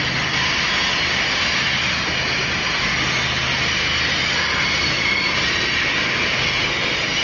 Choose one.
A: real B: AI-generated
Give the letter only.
A